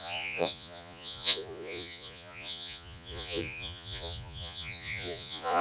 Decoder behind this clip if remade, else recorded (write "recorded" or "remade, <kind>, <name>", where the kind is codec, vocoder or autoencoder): remade, vocoder, Vocos